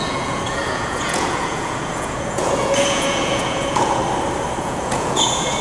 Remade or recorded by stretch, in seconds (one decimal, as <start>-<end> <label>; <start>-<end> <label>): 0.0-4.0 remade; 4.0-4.6 recorded; 4.6-5.6 remade